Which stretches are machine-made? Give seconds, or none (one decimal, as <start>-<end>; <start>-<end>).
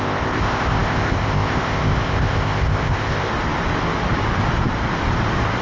0.0-3.3